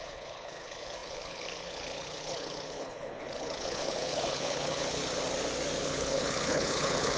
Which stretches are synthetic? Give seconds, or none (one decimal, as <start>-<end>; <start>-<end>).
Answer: 0.0-5.0; 5.8-7.2